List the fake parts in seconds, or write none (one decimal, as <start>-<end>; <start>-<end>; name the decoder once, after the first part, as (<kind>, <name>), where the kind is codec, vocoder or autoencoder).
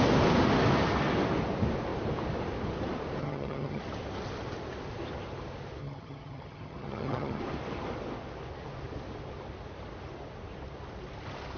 3.2-3.8 (vocoder, HiFi-GAN); 5.8-7.4